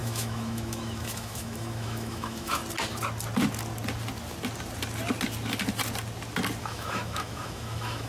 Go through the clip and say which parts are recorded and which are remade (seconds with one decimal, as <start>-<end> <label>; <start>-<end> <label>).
0.0-2.6 remade; 2.6-6.6 recorded; 6.6-8.1 remade